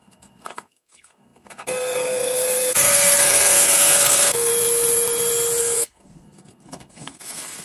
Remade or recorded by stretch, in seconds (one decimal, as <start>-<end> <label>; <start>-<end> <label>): 0.0-4.5 remade; 4.5-5.6 recorded; 5.6-7.6 remade